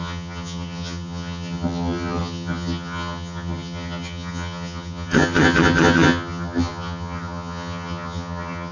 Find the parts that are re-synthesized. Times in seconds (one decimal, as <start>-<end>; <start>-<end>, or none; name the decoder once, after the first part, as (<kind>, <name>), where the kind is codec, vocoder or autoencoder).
0.0-8.7 (vocoder, HiFi-GAN)